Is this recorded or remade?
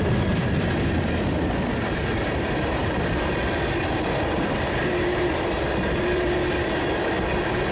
remade